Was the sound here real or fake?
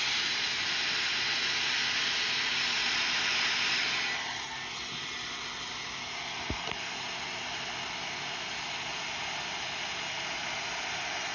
real